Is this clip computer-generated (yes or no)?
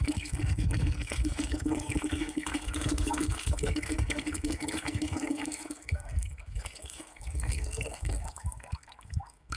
yes